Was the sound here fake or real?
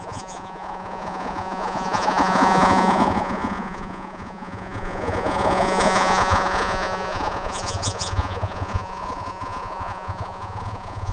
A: fake